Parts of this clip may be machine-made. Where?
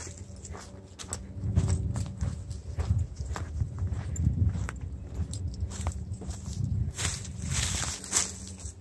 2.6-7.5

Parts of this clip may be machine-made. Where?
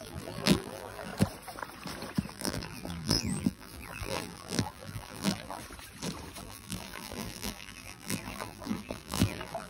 0.0-1.1; 2.3-5.6; 6.4-9.7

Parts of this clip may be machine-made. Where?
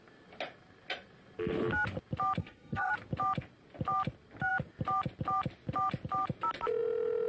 2.4-2.9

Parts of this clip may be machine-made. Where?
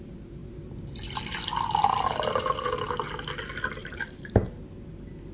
3.8-4.5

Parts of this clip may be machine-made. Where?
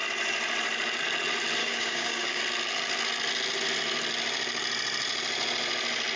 1.6-2.4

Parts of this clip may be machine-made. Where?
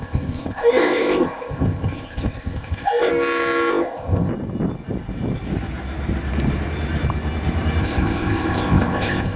0.0-3.1; 3.7-4.3; 7.8-9.4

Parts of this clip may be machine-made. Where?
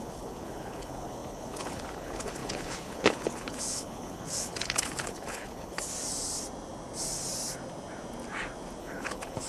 0.0-5.9; 8.8-9.5